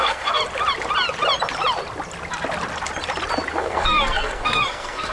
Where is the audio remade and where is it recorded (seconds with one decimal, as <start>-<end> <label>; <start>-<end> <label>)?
0.0-0.4 remade; 0.4-3.5 recorded; 3.5-5.1 remade